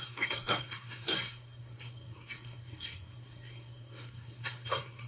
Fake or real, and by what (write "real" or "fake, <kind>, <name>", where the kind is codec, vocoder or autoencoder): fake, codec, SNAC